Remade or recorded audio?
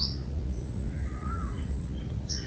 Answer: remade